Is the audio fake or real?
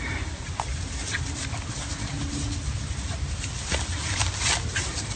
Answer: real